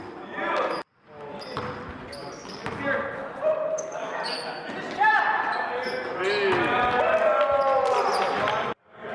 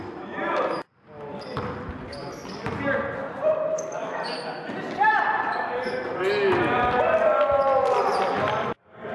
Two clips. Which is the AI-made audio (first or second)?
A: second